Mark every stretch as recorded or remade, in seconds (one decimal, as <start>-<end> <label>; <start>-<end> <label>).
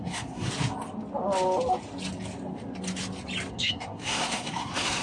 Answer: 0.0-0.5 remade; 0.5-3.5 recorded; 3.5-5.0 remade